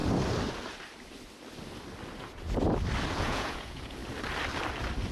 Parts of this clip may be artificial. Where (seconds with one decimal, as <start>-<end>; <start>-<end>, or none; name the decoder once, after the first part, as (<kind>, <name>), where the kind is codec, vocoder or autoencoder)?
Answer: 3.1-4.0 (vocoder, Vocos)